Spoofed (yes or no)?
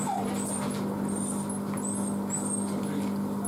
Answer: no